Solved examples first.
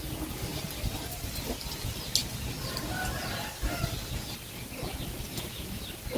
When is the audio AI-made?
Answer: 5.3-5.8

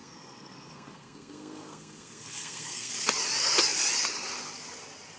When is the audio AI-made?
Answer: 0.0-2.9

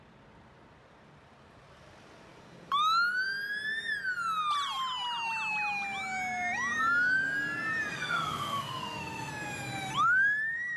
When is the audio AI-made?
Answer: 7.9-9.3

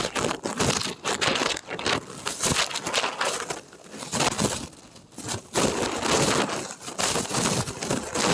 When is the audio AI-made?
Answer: none

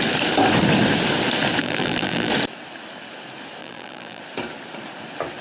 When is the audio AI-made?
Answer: 1.6-2.3; 3.6-4.2